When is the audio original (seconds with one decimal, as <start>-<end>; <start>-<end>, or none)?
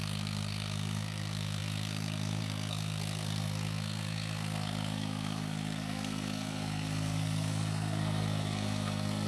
none